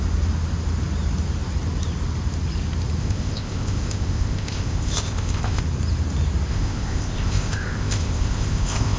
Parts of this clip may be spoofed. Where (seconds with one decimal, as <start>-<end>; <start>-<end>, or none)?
3.0-5.6; 6.5-9.0